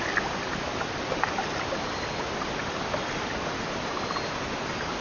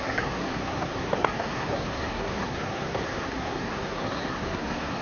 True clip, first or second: first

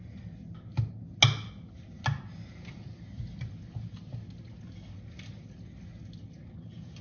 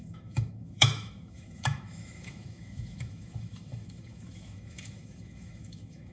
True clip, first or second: first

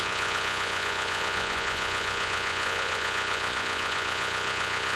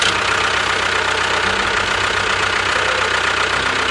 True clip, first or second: second